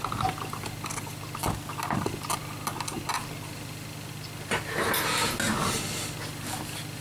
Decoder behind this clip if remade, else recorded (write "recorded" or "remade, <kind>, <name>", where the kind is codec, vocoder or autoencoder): recorded